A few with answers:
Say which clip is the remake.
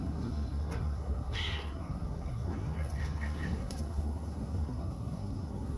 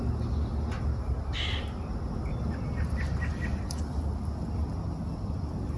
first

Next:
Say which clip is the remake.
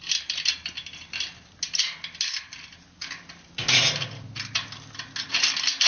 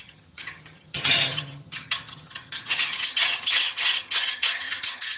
second